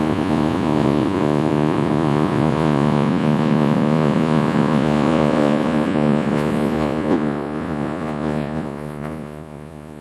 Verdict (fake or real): fake